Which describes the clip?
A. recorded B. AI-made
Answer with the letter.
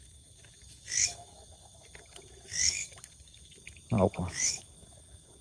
B